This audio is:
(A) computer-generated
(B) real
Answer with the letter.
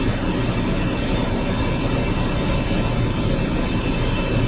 B